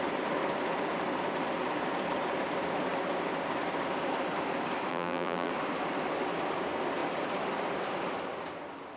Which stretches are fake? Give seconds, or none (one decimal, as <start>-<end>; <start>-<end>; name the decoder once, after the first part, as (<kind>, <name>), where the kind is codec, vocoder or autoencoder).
4.9-5.5 (vocoder, BigVGAN v2)